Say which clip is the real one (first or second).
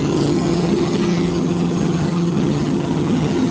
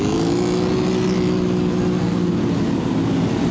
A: second